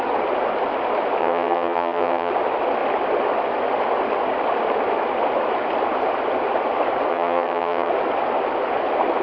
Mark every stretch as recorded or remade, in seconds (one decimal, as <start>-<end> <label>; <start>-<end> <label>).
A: 0.0-1.2 recorded; 1.2-2.3 remade; 2.3-7.1 recorded; 7.1-7.9 remade; 7.9-9.2 recorded